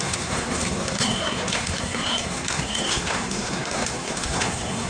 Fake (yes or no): yes